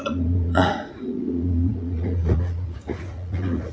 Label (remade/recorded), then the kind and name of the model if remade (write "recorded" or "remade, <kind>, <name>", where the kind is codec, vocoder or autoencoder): remade, vocoder, Vocos